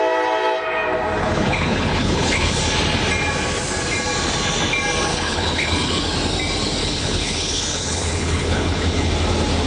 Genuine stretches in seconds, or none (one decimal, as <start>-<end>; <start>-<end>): 0.0-1.2; 2.6-5.1; 6.0-6.8; 9.1-9.7